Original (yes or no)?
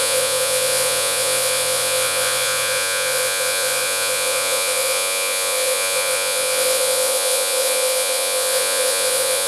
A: no